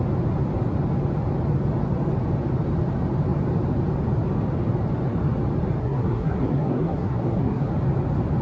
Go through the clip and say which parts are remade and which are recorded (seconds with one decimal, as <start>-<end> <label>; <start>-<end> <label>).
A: 0.0-5.8 recorded; 5.8-7.7 remade; 7.7-8.4 recorded